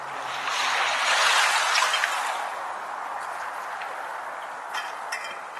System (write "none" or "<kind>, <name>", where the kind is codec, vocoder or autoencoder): none